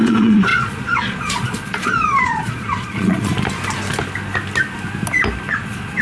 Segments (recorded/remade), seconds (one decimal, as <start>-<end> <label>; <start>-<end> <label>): 0.0-3.3 remade; 3.3-5.5 recorded; 5.5-6.0 remade